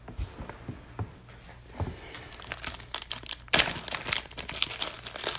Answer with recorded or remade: recorded